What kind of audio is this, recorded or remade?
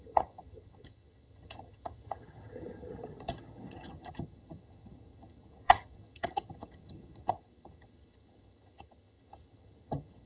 remade